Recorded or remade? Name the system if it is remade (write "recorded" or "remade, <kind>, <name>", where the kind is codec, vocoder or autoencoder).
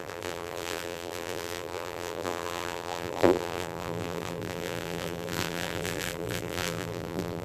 remade, vocoder, BigVGAN v2